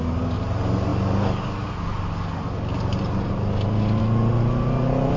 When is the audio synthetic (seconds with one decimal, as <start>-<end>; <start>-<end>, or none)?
none